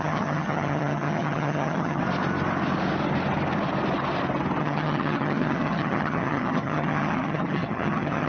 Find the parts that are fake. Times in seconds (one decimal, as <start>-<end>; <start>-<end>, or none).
0.0-2.0; 4.6-8.3